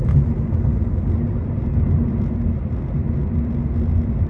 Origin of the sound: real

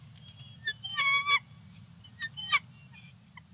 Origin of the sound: real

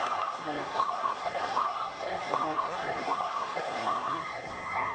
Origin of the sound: fake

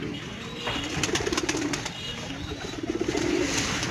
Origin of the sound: real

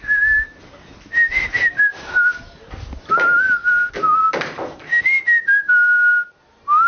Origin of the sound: real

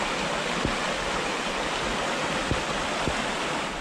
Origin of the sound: real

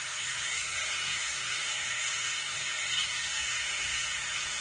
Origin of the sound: fake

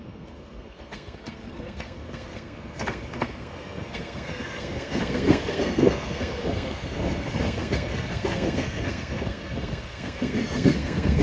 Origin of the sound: fake